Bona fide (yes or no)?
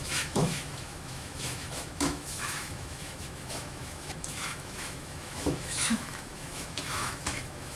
no